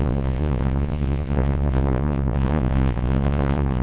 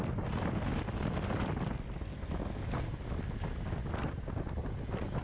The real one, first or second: second